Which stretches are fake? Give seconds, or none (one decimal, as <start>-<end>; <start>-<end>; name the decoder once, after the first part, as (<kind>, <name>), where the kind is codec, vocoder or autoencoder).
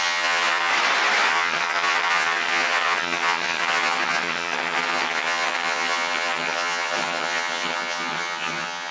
0.0-0.7 (vocoder, HiFi-GAN); 1.3-8.9